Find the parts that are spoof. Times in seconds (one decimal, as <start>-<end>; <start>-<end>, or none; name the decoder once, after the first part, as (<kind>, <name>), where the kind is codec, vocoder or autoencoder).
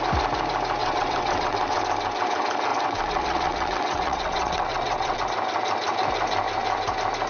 0.8-1.8 (vocoder, WaveNeXt); 2.7-5.2